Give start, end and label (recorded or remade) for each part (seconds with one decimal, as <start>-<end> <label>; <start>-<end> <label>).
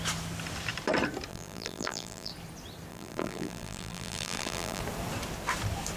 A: 0.0-1.3 recorded; 1.3-2.3 remade; 2.3-2.9 recorded; 2.9-4.8 remade; 4.8-6.0 recorded